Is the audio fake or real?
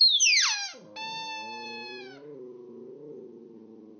real